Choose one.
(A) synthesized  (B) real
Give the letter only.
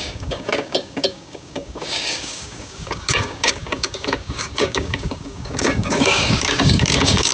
A